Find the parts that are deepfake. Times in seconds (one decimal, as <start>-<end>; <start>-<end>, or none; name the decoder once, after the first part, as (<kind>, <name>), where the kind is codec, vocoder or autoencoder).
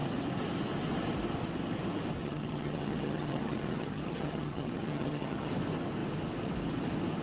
2.2-5.5 (vocoder, HiFi-GAN)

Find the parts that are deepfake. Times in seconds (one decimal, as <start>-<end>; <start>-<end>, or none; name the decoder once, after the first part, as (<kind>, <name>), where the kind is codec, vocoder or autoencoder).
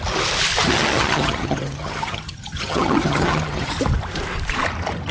0.6-3.7 (vocoder, HiFi-GAN)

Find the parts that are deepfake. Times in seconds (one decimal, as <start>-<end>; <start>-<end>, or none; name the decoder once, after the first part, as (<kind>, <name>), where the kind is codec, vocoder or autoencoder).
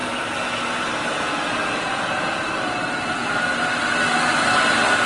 1.1-2.4 (vocoder, Vocos)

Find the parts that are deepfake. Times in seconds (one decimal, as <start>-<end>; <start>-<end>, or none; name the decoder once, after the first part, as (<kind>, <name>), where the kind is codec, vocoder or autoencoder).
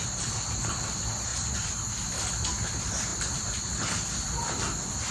none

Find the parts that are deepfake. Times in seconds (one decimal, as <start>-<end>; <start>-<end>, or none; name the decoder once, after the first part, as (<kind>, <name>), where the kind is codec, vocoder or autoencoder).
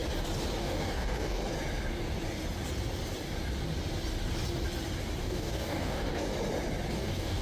0.6-1.4 (codec, DAC); 5.2-6.3; 6.9-7.4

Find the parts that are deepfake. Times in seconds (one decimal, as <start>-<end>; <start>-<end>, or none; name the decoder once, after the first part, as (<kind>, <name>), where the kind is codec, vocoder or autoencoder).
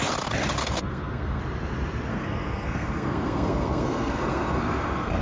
0.6-1.4 (codec, SNAC); 2.1-5.2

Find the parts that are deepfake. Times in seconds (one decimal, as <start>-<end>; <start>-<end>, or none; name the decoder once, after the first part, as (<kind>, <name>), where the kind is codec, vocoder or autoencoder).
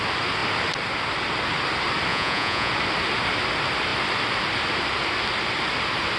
2.1-2.7 (vocoder, Vocos)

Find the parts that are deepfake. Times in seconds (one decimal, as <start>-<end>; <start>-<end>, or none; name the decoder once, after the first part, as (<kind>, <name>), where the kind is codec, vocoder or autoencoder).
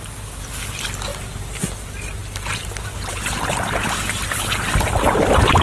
none